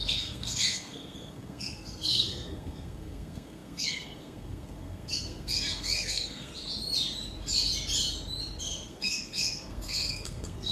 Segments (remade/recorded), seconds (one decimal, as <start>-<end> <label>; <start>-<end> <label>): 0.0-6.5 remade; 6.5-8.6 recorded; 8.6-10.7 remade